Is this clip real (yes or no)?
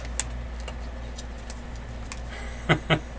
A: yes